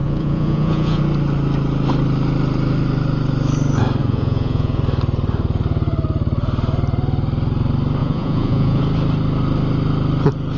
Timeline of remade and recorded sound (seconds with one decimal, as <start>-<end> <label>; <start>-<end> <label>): 0.0-1.0 remade; 1.0-4.0 recorded; 4.0-4.8 remade; 4.8-8.0 recorded; 8.0-8.8 remade; 8.8-10.6 recorded